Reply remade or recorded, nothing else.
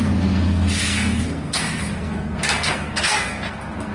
remade